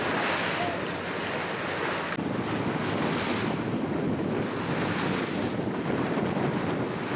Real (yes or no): yes